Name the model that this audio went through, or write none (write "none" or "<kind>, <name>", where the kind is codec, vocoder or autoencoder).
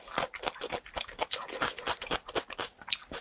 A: none